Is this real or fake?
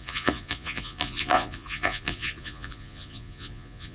fake